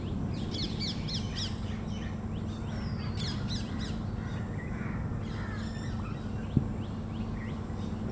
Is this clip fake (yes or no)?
no